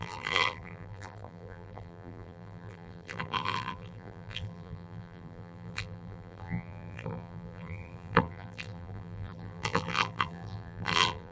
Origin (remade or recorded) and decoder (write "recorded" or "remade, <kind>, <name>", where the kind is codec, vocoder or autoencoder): remade, vocoder, BigVGAN v2